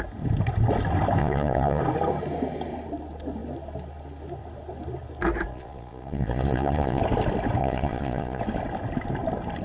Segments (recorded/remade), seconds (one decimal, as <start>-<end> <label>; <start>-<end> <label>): 0.0-1.2 recorded; 1.2-1.8 remade; 1.8-5.5 recorded; 5.5-7.0 remade; 7.0-7.6 recorded; 7.6-8.4 remade; 8.4-9.6 recorded